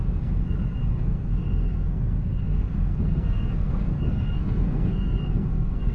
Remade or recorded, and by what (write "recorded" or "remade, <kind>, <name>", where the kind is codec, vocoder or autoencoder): remade, codec, SNAC